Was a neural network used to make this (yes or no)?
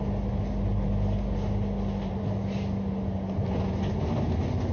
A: no